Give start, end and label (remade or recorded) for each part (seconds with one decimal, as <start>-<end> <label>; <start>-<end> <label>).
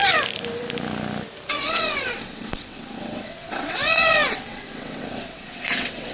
0.0-1.5 recorded; 1.5-6.1 remade